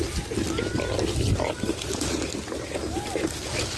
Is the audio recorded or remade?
recorded